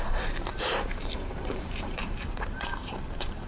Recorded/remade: remade